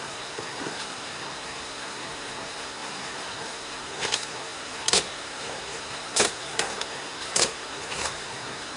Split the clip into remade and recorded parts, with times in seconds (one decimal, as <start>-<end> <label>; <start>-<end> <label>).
0.0-8.8 remade